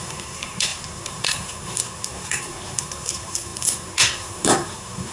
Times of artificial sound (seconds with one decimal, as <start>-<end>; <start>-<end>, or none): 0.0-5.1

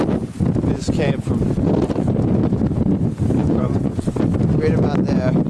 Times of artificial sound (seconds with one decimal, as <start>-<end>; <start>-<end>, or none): 3.4-4.0

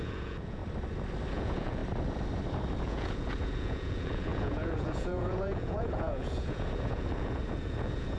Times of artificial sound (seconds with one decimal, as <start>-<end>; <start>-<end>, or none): 0.0-0.6; 1.3-1.8; 2.8-8.2

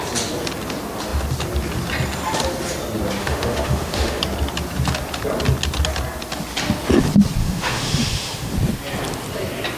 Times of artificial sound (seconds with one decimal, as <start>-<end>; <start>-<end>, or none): 3.2-4.2; 7.4-8.5

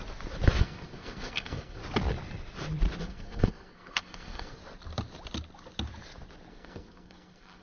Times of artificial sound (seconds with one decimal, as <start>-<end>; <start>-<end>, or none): 0.6-1.8; 3.0-4.6; 6.5-7.6

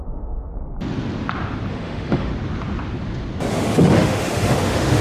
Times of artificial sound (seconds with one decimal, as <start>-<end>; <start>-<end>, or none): 0.0-0.5; 1.7-2.3; 3.5-5.0

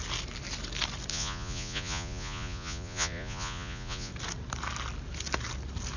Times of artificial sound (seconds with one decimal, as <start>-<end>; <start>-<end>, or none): 1.1-4.1

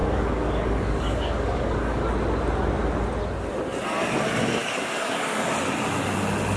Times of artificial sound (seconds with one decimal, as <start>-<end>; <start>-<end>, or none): 0.0-2.1; 4.6-5.5